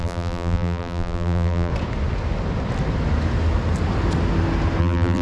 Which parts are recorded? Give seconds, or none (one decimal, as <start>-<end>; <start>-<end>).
1.7-4.8